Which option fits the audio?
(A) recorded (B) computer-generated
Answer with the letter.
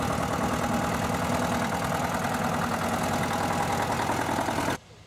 A